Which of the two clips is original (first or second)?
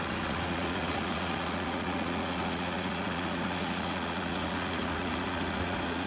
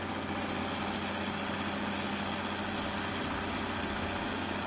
second